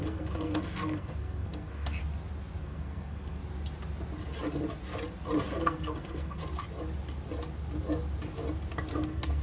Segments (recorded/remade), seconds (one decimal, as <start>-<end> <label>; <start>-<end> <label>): 0.0-2.0 remade; 2.0-2.6 recorded; 2.6-3.4 remade; 3.4-5.5 recorded; 5.5-6.4 remade; 6.4-8.9 recorded; 8.9-9.4 remade

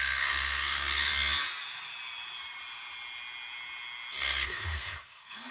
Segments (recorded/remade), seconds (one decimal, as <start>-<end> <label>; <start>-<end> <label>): 0.0-1.1 remade; 1.1-4.1 recorded; 4.1-5.5 remade

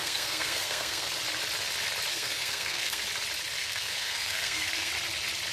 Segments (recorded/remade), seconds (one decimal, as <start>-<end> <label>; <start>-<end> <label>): 0.0-1.1 remade; 1.1-2.1 recorded; 2.1-3.0 remade; 3.0-3.6 recorded; 3.6-4.9 remade; 4.9-5.5 recorded

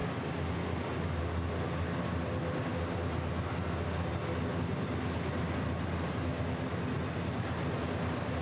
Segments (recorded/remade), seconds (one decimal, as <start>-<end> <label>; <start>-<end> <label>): 0.0-8.4 recorded

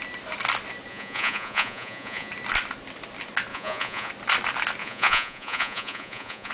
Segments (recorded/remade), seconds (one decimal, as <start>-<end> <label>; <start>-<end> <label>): 0.0-0.9 recorded; 0.9-2.3 remade; 2.3-3.5 recorded; 3.5-4.1 remade; 4.1-4.8 recorded; 4.8-6.5 remade

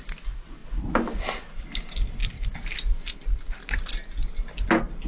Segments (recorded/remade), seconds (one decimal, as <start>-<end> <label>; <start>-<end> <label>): 0.0-5.1 recorded

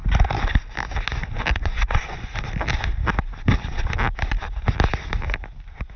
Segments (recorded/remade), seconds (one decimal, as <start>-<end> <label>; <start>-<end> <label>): 0.0-1.5 recorded; 1.5-2.3 remade; 2.3-6.0 recorded

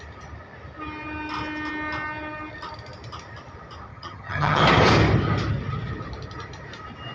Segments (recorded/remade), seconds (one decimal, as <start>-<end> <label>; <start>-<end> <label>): 0.0-3.9 recorded; 3.9-4.6 remade; 4.6-7.1 recorded